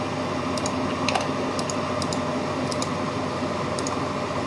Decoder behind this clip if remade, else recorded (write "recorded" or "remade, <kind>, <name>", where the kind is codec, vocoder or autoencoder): recorded